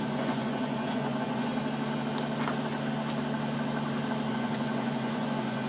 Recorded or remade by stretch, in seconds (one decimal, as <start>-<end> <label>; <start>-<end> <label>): 0.0-1.5 remade; 1.5-4.3 recorded; 4.3-5.7 remade

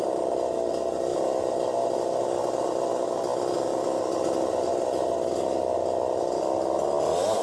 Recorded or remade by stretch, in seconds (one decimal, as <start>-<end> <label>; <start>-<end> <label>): 0.0-7.4 recorded

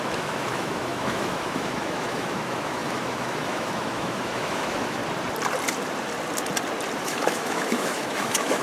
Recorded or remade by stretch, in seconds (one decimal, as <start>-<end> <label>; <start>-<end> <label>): 0.0-5.0 remade; 5.0-7.0 recorded; 7.0-8.6 remade

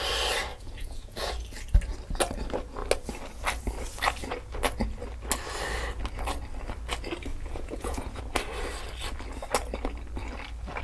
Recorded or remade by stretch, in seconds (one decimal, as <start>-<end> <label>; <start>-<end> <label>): 0.0-0.5 recorded; 0.5-1.3 remade; 1.3-7.3 recorded; 7.3-8.2 remade; 8.2-10.8 recorded

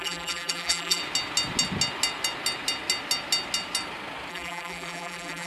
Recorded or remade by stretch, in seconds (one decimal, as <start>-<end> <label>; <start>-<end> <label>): 0.0-1.0 remade; 1.0-4.3 recorded; 4.3-5.5 remade

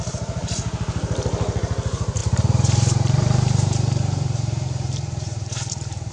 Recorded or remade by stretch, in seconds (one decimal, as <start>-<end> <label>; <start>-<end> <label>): 0.0-2.2 recorded; 2.2-6.1 remade

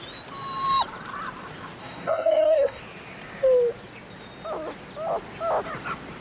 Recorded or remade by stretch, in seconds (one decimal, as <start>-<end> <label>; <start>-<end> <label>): 0.0-1.8 recorded; 1.8-2.8 remade; 2.8-6.2 recorded

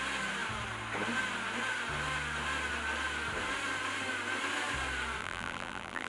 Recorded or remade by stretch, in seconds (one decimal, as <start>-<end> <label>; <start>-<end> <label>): 0.0-5.2 recorded; 5.2-6.1 remade